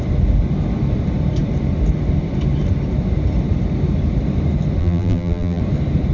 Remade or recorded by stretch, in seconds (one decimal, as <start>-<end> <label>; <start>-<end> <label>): 0.0-4.8 recorded; 4.8-5.6 remade; 5.6-6.1 recorded